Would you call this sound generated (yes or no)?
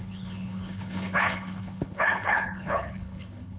yes